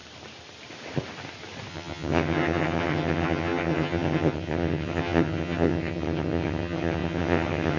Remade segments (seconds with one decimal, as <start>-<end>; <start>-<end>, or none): 1.7-7.8